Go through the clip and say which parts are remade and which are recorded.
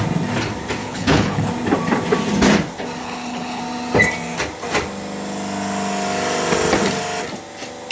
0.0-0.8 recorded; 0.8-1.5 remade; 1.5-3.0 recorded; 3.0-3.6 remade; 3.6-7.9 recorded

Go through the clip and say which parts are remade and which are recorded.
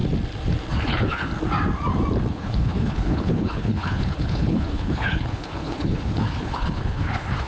0.0-0.7 recorded; 0.7-1.3 remade; 1.3-2.3 recorded; 2.3-7.5 remade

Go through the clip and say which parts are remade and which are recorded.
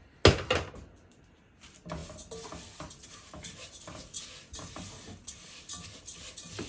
0.0-6.7 recorded